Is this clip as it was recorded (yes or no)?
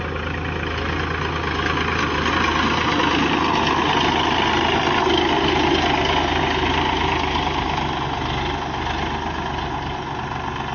yes